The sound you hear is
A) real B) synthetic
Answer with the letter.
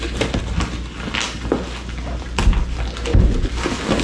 A